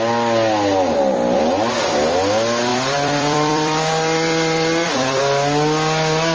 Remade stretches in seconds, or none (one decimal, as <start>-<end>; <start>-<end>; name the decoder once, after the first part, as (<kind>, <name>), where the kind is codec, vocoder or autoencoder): 2.7-5.2 (vocoder, BigVGAN v2)